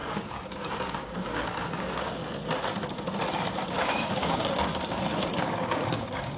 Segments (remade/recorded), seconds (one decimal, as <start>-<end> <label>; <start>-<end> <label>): 0.0-2.2 remade; 2.2-3.8 recorded; 3.8-4.7 remade; 4.7-5.4 recorded; 5.4-6.4 remade